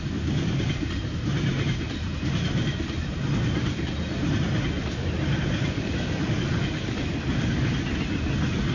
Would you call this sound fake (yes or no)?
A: no